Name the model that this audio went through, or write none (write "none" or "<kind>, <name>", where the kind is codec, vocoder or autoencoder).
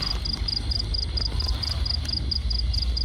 none